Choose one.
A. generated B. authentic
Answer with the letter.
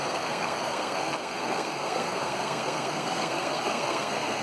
A